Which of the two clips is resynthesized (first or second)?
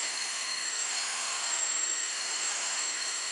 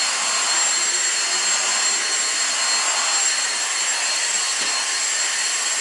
first